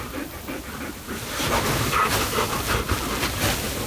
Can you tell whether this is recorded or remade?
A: recorded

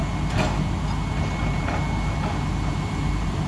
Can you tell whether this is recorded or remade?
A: recorded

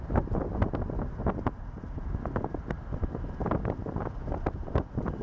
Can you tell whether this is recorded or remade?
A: recorded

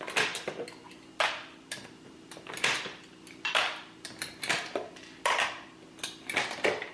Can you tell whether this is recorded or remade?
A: recorded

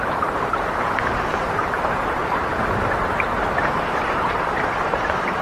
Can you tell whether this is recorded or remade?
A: remade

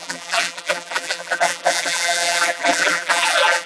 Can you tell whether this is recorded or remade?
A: remade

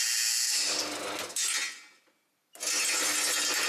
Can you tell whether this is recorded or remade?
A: recorded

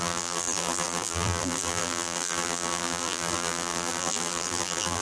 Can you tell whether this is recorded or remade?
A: remade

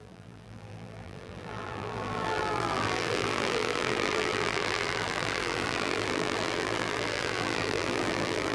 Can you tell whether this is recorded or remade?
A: remade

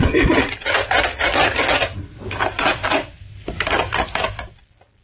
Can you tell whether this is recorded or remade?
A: remade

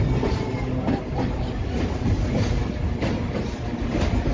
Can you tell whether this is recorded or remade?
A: recorded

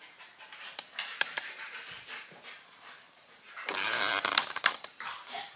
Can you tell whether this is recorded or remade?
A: remade